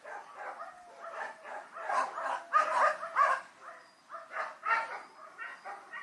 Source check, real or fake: real